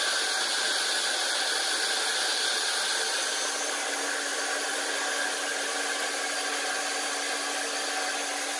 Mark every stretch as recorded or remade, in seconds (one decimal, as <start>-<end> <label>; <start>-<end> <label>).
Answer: 0.0-8.6 recorded